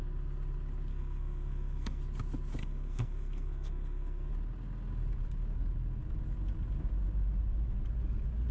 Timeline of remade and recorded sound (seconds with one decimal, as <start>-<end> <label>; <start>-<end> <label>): 0.0-0.9 recorded; 0.9-2.0 remade; 2.0-2.6 recorded; 2.6-4.3 remade; 4.3-8.5 recorded